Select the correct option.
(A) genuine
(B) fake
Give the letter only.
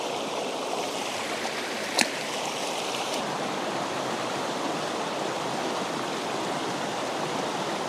B